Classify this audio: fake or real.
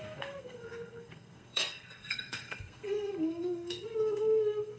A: fake